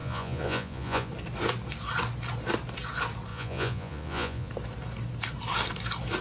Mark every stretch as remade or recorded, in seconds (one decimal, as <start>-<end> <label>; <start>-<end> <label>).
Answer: 0.0-1.1 remade; 1.1-3.3 recorded; 3.3-4.5 remade; 4.5-6.2 recorded